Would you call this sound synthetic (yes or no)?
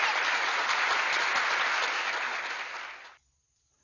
no